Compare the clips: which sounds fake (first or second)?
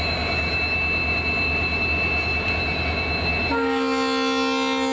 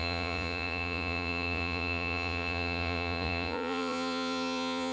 second